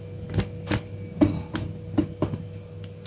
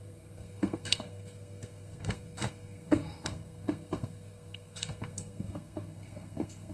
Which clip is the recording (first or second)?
first